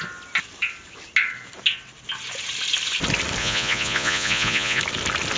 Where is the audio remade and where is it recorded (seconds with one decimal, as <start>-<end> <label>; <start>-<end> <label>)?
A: 0.0-3.4 recorded; 3.4-4.8 remade; 4.8-5.4 recorded